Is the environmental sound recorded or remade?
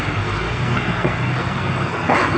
remade